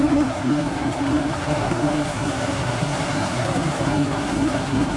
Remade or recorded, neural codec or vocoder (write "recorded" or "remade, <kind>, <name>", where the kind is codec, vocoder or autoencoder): remade, codec, SNAC